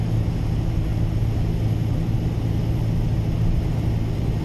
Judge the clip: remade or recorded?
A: recorded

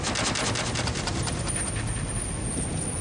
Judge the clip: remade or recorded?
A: recorded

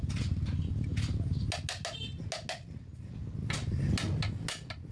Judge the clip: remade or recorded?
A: recorded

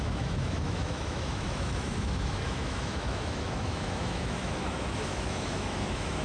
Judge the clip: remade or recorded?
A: remade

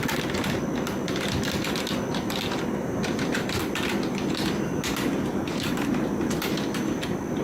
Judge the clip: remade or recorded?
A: recorded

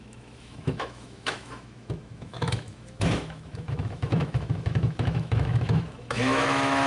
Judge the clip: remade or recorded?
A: remade